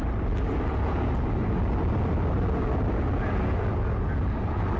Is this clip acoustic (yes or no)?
yes